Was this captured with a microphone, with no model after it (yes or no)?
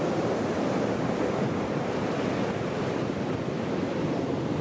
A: yes